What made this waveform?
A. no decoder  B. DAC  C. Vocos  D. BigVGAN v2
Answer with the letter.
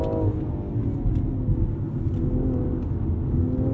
A